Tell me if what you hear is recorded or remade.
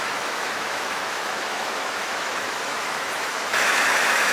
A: remade